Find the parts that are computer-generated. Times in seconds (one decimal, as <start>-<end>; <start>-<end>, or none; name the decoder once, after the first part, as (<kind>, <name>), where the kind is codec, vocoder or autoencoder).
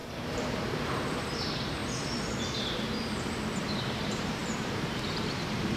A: 0.0-1.8 (vocoder, BigVGAN v2); 3.6-5.8